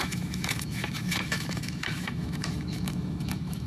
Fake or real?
fake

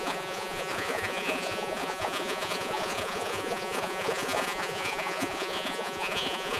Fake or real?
fake